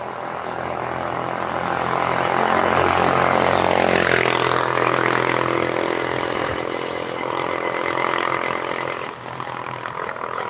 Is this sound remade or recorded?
recorded